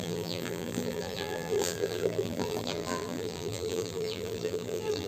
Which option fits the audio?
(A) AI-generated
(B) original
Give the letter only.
A